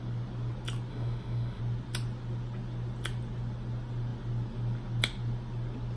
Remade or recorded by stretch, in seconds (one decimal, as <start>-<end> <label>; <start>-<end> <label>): 0.0-0.9 recorded; 0.9-1.6 remade; 1.6-6.0 recorded